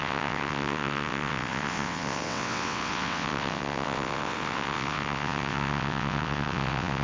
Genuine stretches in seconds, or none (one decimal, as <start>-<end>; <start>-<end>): none